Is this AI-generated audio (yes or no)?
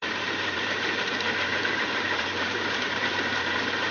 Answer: yes